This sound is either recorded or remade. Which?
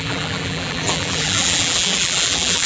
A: remade